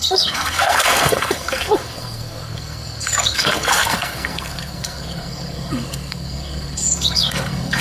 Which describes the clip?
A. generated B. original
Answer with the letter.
A